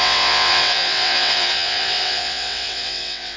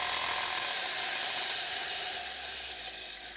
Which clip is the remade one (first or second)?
first